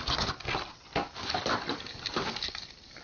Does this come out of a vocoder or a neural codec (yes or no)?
no